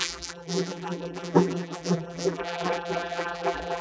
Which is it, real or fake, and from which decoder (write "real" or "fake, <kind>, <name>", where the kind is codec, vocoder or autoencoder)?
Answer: fake, vocoder, BigVGAN v2